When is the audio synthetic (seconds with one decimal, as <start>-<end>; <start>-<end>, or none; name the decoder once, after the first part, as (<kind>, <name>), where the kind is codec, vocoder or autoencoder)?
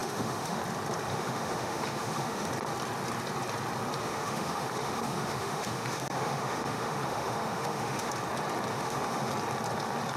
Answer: 0.0-0.6 (autoencoder, DAC-VAE); 1.1-2.5; 4.0-8.1; 8.7-9.3